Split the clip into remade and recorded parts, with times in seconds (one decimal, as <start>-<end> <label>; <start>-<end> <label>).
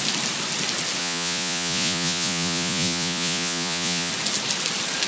0.0-1.0 recorded; 1.0-4.1 remade; 4.1-5.1 recorded